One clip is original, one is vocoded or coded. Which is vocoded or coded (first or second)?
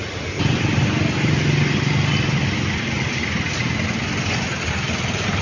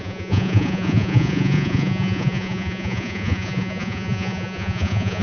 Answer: second